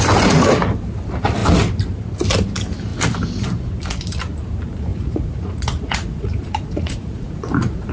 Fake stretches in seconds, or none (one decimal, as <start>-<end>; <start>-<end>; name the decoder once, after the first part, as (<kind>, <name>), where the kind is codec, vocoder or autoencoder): 4.9-7.9 (vocoder, Vocos)